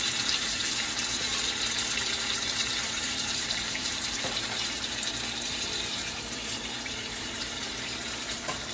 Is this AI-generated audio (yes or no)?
yes